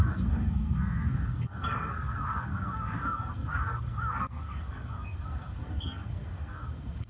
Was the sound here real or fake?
fake